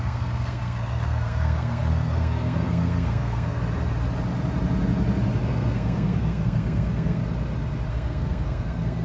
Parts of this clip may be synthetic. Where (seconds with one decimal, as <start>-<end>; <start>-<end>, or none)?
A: 0.0-3.6; 5.4-7.2; 7.9-9.0